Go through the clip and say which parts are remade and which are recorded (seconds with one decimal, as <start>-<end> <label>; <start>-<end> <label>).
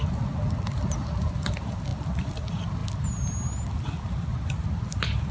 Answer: 0.0-5.3 recorded